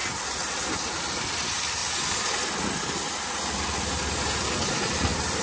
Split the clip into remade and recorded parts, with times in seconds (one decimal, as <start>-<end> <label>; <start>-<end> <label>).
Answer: 0.0-5.4 recorded